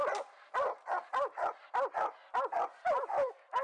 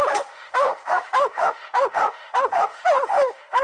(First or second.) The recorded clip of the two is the first